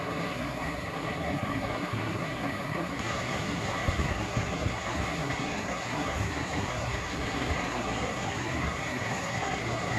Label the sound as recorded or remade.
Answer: remade